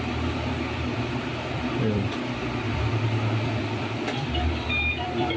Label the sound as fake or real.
fake